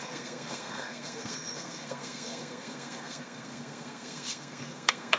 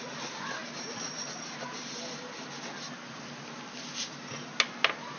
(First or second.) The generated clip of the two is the first